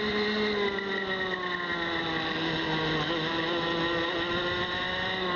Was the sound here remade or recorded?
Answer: recorded